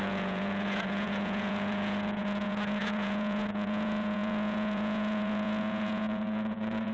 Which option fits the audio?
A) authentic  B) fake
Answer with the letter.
B